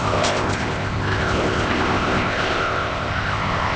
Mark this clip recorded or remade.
remade